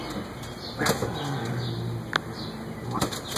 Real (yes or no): yes